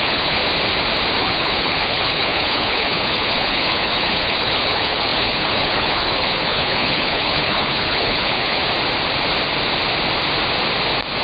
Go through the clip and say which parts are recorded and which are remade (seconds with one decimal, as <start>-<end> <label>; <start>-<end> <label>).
0.0-0.4 remade; 0.4-1.2 recorded; 1.2-8.6 remade; 8.6-11.2 recorded